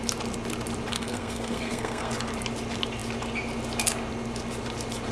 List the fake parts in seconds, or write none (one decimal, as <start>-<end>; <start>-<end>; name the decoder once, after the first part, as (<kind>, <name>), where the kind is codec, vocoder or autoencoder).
0.9-2.1 (codec, SNAC)